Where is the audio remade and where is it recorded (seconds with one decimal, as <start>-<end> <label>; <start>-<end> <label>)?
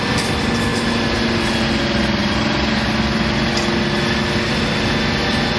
0.0-0.7 remade; 0.7-1.8 recorded; 1.8-2.2 remade; 2.2-5.6 recorded